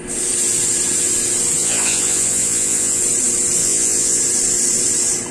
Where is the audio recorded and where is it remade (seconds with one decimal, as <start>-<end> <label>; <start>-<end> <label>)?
0.0-1.6 recorded; 1.6-3.0 remade; 3.0-3.6 recorded; 3.6-4.2 remade; 4.2-5.3 recorded